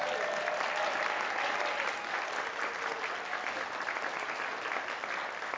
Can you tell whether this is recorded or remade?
recorded